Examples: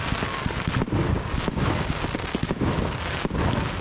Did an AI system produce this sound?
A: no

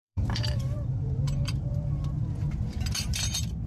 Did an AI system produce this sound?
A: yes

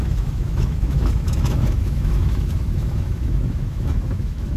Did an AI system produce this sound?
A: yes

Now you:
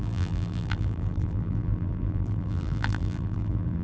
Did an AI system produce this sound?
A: yes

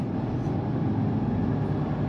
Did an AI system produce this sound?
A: no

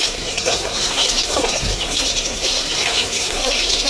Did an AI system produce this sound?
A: yes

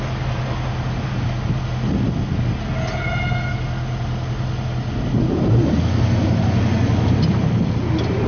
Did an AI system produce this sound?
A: no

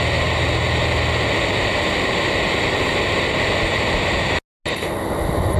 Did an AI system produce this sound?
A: no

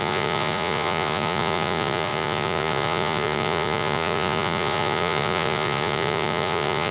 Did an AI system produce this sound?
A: yes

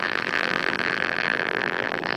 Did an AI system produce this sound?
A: yes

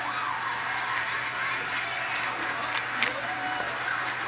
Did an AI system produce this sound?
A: no